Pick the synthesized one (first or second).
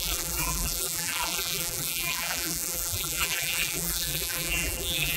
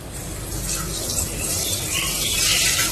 first